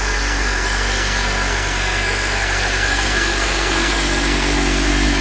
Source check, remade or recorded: remade